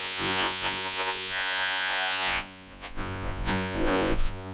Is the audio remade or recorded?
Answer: remade